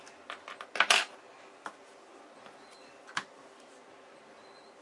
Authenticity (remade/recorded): recorded